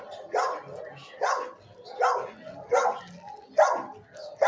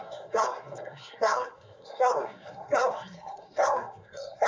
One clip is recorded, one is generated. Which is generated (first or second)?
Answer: second